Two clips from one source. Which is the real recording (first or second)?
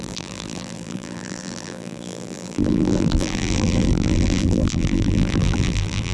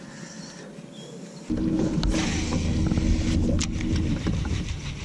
second